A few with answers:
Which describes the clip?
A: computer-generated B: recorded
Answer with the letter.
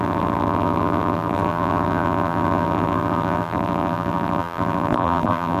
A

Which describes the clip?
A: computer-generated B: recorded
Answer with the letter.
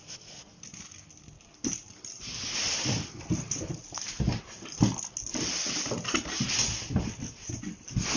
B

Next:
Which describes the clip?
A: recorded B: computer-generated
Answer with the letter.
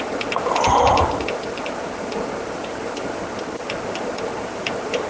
B